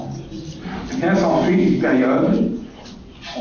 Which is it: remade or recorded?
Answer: recorded